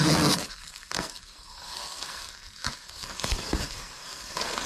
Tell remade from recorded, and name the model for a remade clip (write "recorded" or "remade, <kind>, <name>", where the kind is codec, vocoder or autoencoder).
remade, codec, SNAC